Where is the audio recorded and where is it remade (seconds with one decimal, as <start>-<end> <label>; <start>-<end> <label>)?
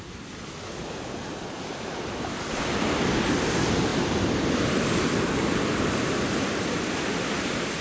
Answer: 0.0-3.9 recorded; 3.9-7.8 remade